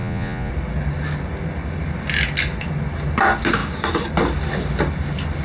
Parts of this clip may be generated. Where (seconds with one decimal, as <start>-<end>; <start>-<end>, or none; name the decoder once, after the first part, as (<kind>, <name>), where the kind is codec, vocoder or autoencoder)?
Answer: 0.0-0.5 (vocoder, Vocos)